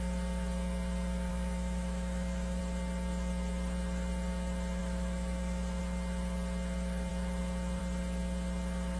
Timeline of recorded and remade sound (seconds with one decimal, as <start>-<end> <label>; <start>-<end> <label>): 0.0-1.3 recorded; 1.3-2.6 remade; 2.6-4.8 recorded; 4.8-5.8 remade; 5.8-9.0 recorded